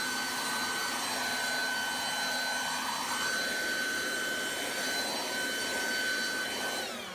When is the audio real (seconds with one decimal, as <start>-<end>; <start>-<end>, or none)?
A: 0.0-7.1